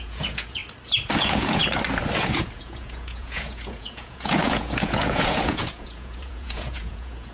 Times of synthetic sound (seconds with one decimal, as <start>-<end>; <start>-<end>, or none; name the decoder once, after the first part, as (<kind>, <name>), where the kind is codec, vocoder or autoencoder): 0.0-0.6 (vocoder, Vocos); 1.2-1.6; 2.2-7.3